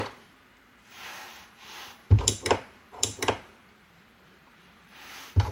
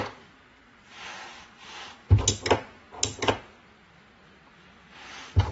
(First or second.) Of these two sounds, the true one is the second